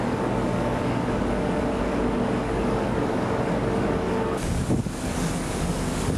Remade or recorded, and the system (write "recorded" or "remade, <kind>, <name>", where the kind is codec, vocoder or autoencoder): remade, codec, DAC